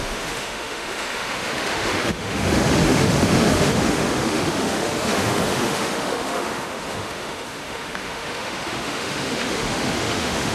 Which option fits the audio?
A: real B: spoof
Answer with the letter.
B